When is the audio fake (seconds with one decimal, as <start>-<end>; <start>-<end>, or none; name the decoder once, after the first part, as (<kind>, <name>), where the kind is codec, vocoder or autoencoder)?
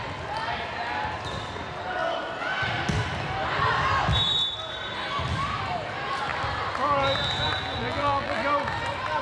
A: 7.8-8.4 (vocoder, BigVGAN v2)